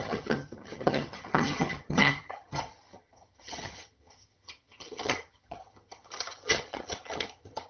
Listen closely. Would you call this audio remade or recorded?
remade